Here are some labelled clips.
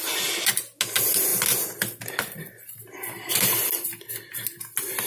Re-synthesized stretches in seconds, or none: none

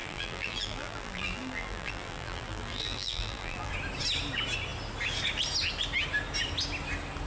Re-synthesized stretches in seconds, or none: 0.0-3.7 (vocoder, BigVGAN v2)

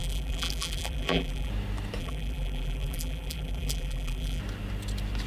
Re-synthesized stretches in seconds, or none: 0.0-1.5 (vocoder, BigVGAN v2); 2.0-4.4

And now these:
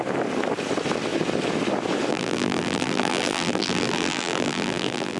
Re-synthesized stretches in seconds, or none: 2.1-5.2 (vocoder, BigVGAN v2)

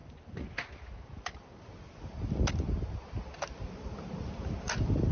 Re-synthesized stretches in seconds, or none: none